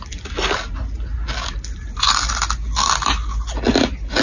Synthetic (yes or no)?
no